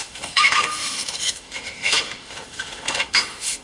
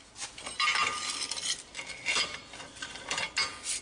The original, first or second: second